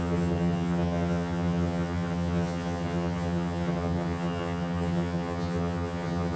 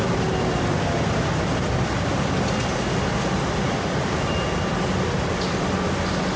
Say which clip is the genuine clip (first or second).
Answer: second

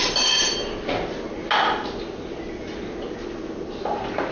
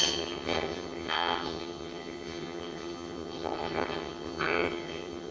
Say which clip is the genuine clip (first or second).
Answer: first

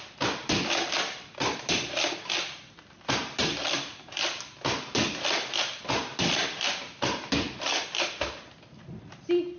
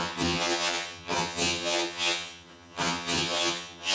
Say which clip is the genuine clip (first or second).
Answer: first